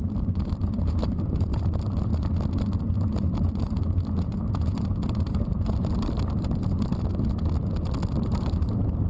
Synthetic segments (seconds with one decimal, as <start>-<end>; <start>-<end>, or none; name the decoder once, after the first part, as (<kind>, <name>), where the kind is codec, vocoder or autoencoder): 0.0-2.1 (vocoder, BigVGAN v2); 2.8-6.9; 8.2-9.1

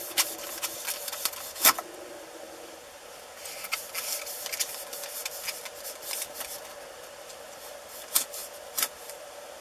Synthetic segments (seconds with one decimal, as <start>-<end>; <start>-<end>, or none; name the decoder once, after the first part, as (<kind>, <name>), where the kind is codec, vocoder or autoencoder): 8.4-9.6 (vocoder, BigVGAN v2)

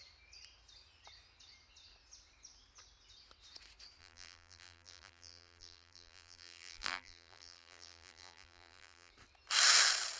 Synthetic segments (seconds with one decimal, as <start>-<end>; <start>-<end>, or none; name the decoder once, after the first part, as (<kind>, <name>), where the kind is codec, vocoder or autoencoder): 4.0-9.1 (vocoder, BigVGAN v2)

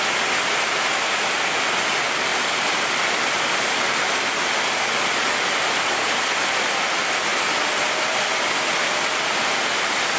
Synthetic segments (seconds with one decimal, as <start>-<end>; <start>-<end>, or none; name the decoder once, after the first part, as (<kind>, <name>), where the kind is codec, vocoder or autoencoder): 2.3-3.6 (vocoder, BigVGAN v2)

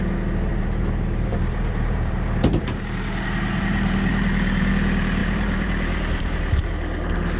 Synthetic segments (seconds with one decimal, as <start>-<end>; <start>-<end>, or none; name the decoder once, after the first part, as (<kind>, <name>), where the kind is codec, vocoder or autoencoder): 0.5-4.7 (vocoder, BigVGAN v2); 5.2-6.7